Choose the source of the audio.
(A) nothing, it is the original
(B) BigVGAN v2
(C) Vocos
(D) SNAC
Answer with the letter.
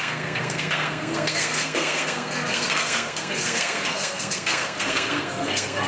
D